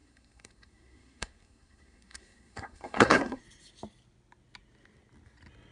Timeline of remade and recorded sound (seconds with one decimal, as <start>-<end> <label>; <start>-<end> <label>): 0.0-3.4 remade; 3.4-5.7 recorded